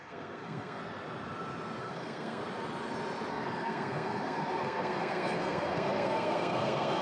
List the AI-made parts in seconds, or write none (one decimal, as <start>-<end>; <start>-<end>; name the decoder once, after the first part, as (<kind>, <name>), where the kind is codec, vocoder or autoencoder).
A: 0.0-0.8 (codec, SNAC); 1.8-2.4; 3.3-7.0